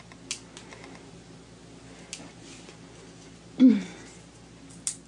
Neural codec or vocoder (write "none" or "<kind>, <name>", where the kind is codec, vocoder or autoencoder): none